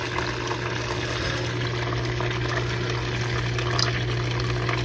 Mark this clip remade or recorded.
recorded